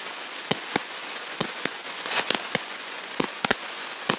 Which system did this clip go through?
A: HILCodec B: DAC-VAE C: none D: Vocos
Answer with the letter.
D